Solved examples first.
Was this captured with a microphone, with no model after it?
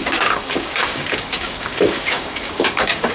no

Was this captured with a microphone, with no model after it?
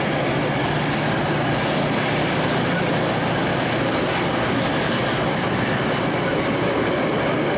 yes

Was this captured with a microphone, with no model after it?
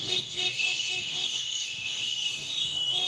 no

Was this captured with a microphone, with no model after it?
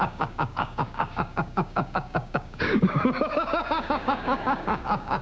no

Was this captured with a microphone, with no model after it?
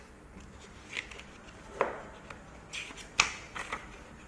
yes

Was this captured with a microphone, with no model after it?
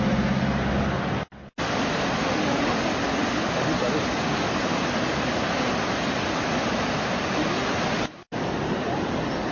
yes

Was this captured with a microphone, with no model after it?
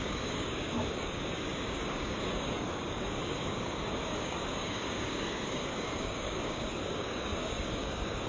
no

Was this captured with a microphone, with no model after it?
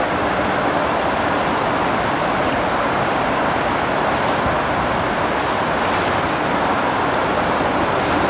yes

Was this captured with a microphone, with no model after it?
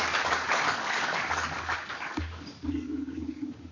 no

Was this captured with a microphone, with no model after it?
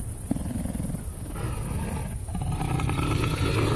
yes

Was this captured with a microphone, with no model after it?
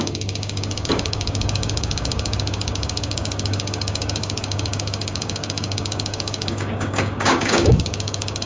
no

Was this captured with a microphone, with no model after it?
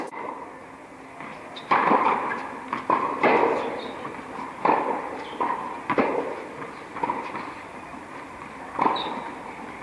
yes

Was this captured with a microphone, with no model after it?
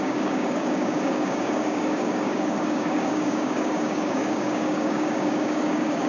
no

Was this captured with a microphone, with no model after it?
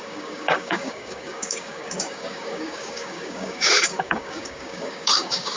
no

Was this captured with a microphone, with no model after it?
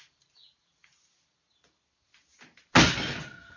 yes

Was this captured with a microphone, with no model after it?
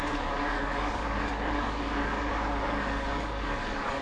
no